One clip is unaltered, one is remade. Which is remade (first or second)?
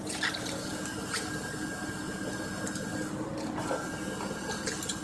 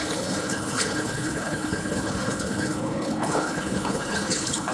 second